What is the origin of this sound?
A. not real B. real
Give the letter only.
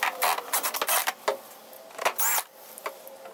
B